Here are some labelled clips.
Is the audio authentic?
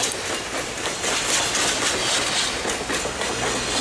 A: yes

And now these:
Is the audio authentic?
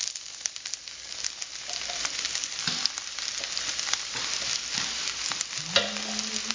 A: yes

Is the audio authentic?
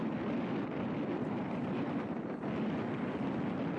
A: yes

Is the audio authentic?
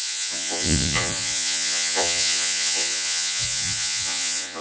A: no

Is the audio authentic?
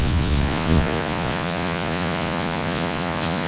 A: no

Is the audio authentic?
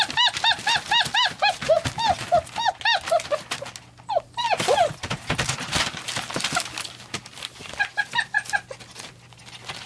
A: yes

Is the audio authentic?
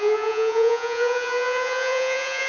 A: no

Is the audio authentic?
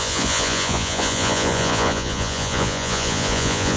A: no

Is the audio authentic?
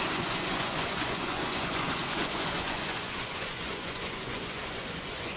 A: no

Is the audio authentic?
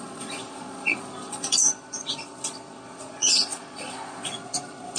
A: no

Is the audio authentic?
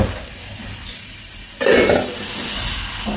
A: yes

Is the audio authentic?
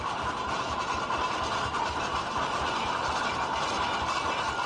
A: yes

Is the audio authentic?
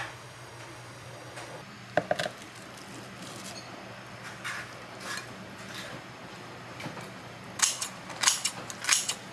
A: yes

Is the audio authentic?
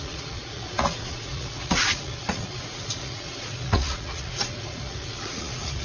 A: no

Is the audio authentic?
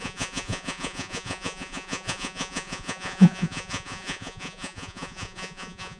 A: no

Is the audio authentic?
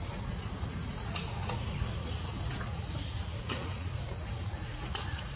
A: no